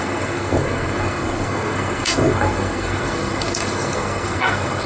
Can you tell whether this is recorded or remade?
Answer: remade